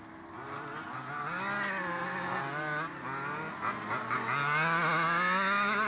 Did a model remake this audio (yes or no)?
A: no